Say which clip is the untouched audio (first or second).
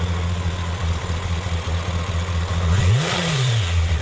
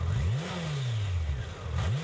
second